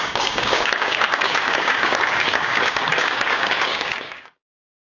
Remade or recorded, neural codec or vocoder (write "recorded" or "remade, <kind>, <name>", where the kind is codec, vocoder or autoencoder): remade, codec, DAC